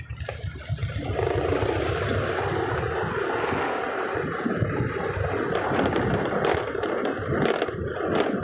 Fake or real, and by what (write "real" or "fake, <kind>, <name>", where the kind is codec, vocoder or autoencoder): real